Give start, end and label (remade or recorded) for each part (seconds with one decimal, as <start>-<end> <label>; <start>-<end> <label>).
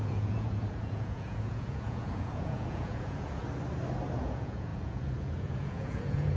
0.0-3.4 remade; 3.4-4.2 recorded; 4.2-6.4 remade